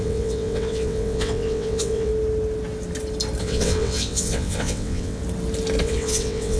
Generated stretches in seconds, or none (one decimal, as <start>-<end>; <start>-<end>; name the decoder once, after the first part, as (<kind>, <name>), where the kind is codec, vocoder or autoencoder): 0.0-2.1 (vocoder, WaveNeXt); 3.4-5.2; 5.8-6.6